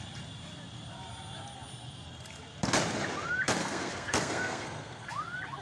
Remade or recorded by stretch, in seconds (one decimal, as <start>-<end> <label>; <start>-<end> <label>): 0.0-3.6 recorded; 3.6-5.1 remade; 5.1-5.6 recorded